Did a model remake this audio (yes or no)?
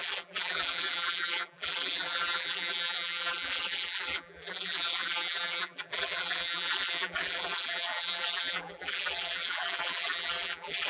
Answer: yes